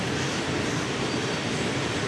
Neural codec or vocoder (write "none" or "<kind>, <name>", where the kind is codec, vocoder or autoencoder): none